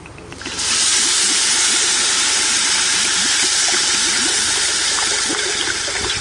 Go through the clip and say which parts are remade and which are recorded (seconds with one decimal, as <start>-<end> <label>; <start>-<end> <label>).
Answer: 0.0-6.2 recorded